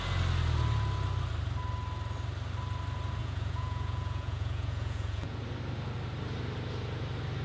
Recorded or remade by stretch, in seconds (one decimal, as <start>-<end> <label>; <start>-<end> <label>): 0.0-3.2 recorded; 3.2-5.4 remade; 5.4-7.4 recorded